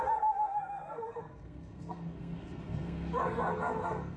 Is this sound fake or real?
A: fake